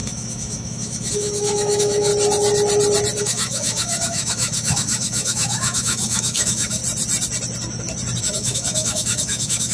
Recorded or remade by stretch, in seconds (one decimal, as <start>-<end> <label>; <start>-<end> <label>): 0.0-2.1 remade; 2.1-3.2 recorded; 3.2-6.8 remade; 6.8-8.2 recorded; 8.2-9.7 remade